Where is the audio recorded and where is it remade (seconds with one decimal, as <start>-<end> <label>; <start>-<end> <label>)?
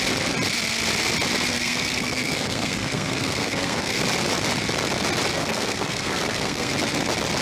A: 0.0-1.5 recorded; 1.5-4.0 remade; 4.0-5.3 recorded; 5.3-6.7 remade; 6.7-7.4 recorded